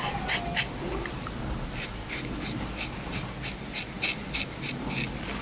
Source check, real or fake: real